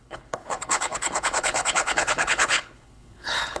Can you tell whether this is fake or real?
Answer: fake